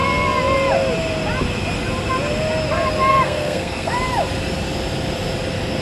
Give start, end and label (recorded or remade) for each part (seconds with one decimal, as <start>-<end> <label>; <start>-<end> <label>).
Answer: 0.0-3.1 recorded; 3.1-3.9 remade; 3.9-5.8 recorded